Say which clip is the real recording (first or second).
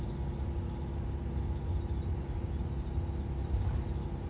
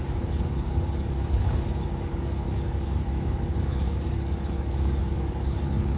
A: first